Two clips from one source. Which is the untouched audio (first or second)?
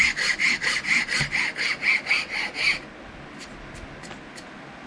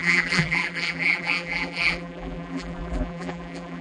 first